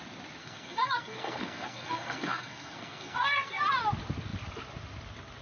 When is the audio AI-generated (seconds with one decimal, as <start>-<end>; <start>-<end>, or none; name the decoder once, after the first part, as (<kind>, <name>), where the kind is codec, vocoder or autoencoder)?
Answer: 0.4-3.6 (codec, SNAC)